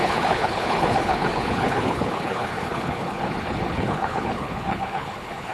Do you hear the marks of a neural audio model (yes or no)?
yes